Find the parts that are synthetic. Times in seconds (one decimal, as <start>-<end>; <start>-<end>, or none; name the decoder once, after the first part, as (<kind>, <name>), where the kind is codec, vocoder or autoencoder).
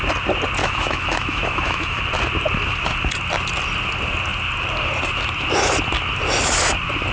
0.6-2.0 (autoencoder, DAC-VAE)